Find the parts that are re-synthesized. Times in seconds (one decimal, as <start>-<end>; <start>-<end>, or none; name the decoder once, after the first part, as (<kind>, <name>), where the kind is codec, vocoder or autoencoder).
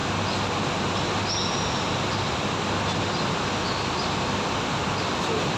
none